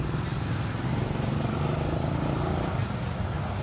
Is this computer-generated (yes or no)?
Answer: no